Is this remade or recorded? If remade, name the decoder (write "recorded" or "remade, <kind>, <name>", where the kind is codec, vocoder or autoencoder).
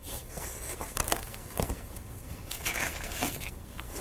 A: remade, codec, SNAC